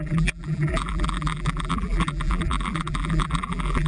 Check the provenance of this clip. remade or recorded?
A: remade